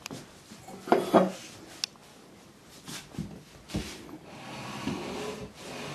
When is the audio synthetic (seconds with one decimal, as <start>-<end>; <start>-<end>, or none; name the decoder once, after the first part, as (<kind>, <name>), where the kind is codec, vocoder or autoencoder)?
none